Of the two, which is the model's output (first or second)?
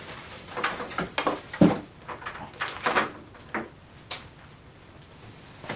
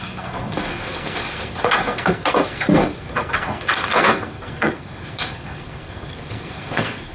second